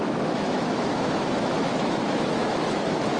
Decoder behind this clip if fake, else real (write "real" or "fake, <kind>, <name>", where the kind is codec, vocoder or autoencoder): fake, autoencoder, DAC-VAE